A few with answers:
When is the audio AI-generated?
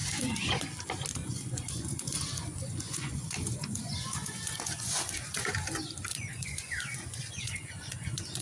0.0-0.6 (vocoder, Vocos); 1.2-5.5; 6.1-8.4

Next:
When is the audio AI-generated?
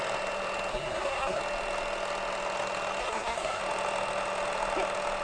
0.7-1.4 (codec, SNAC); 3.0-3.6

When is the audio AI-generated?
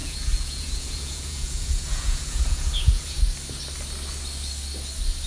0.0-3.2 (vocoder, Vocos)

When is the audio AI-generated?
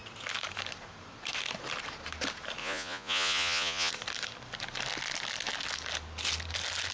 2.6-3.9 (vocoder, Vocos)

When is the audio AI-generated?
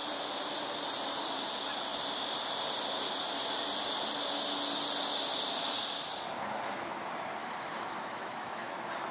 7.4-8.7 (autoencoder, DAC-VAE)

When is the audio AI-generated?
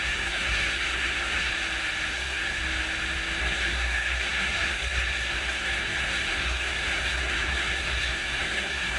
0.0-1.5 (codec, SNAC); 2.1-2.6; 3.4-9.0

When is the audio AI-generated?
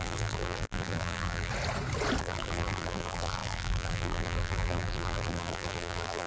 0.0-1.5 (vocoder, BigVGAN v2); 2.2-6.3